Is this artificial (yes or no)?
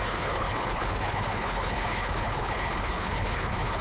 yes